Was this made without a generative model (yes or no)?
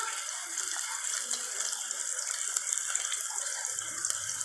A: no